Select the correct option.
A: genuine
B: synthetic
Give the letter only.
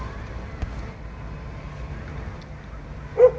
A